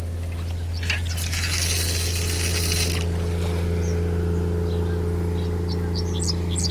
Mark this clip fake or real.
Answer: real